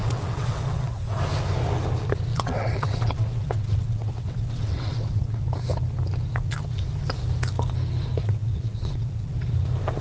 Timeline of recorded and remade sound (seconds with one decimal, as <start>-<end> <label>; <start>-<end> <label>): 0.0-1.2 remade; 1.2-2.3 recorded; 2.3-5.4 remade; 5.4-8.2 recorded; 8.2-9.3 remade; 9.3-10.0 recorded